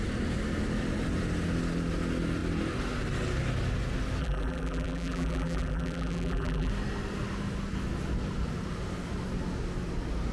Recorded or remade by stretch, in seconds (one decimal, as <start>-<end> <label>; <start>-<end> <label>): 0.0-4.2 recorded; 4.2-6.7 remade; 6.7-10.3 recorded

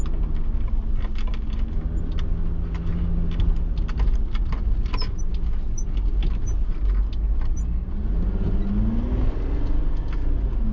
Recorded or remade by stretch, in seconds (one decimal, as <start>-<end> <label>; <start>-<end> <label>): 0.0-10.7 recorded

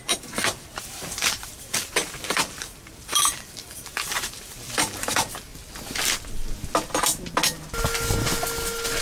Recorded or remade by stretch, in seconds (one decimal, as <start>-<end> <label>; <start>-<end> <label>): 0.0-5.5 remade; 5.5-9.0 recorded

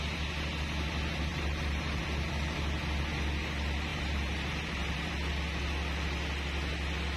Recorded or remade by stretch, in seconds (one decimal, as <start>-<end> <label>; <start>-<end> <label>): 0.0-1.3 recorded; 1.3-2.0 remade; 2.0-3.9 recorded; 3.9-5.1 remade; 5.1-7.2 recorded

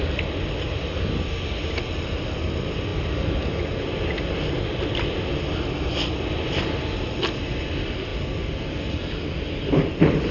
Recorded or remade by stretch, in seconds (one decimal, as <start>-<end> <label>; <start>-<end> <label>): 0.0-8.1 recorded; 8.1-9.4 remade; 9.4-10.3 recorded

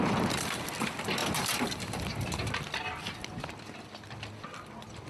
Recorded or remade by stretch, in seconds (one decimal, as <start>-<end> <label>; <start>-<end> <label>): 0.0-5.1 recorded